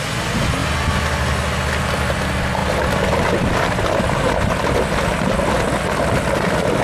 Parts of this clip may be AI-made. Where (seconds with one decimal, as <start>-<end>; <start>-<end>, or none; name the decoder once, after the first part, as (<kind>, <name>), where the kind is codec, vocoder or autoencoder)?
2.6-6.8 (vocoder, BigVGAN v2)